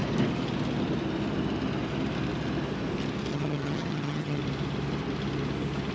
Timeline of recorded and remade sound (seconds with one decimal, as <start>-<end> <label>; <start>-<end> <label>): 0.0-3.3 recorded; 3.3-4.4 remade; 4.4-5.9 recorded